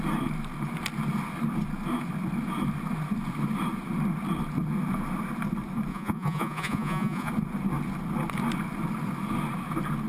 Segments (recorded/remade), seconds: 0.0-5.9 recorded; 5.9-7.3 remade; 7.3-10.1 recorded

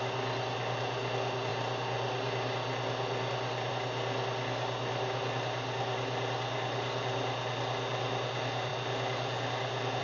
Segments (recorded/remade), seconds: 0.0-10.0 recorded

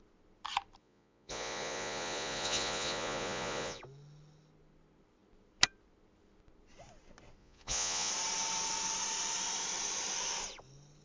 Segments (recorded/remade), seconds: 0.0-0.8 recorded; 0.8-3.8 remade; 3.8-7.4 recorded; 7.4-8.1 remade; 8.1-11.0 recorded

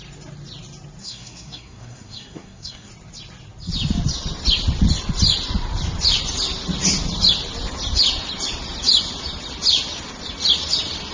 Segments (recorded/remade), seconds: 0.0-1.0 recorded; 1.0-2.9 remade; 2.9-11.1 recorded

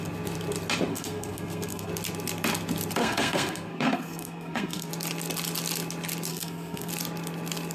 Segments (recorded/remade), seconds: 0.0-0.9 recorded; 0.9-1.9 remade; 1.9-3.0 recorded; 3.0-4.9 remade; 4.9-6.3 recorded; 6.3-6.9 remade; 6.9-7.7 recorded

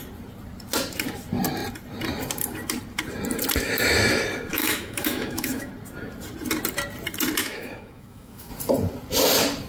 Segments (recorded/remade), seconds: 0.0-4.5 recorded; 4.5-5.7 remade; 5.7-7.4 recorded; 7.4-8.5 remade; 8.5-9.7 recorded

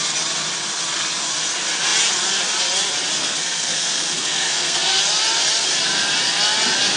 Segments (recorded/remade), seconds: 0.0-3.2 recorded; 3.2-5.0 remade; 5.0-7.0 recorded